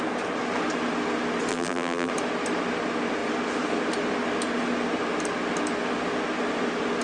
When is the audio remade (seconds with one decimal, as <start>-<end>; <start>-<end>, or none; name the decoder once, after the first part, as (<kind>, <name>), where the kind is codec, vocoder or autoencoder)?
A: 1.5-2.1 (vocoder, BigVGAN v2)

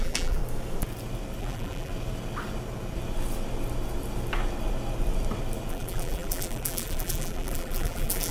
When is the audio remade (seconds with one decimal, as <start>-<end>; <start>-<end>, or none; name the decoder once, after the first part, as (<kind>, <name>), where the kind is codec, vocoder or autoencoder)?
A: 0.0-0.4 (vocoder, BigVGAN v2); 1.4-1.9; 5.7-8.3